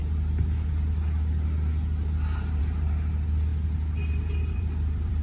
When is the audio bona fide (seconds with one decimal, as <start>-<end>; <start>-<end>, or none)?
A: 0.0-2.6; 3.5-4.1